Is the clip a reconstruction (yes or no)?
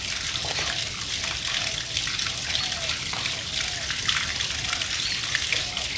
no